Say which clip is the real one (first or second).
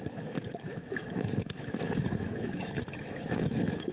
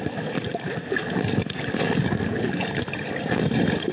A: second